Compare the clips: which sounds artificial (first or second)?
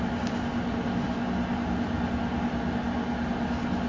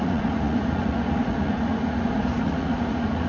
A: second